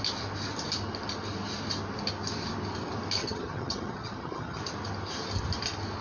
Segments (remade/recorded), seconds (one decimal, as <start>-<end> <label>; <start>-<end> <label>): 0.0-3.2 recorded; 3.2-4.6 remade; 4.6-6.0 recorded